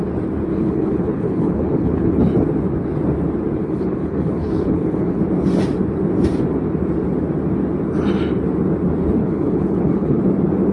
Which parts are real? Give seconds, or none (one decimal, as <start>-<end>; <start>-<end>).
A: 0.0-0.5; 2.2-3.6; 5.2-9.2; 10.2-10.7

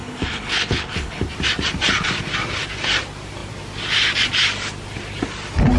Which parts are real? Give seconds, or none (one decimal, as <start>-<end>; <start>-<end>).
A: 1.2-5.8

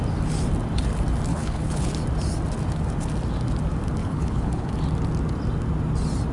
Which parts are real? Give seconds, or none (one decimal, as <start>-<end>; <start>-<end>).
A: 0.0-1.3; 1.9-4.0; 4.7-6.3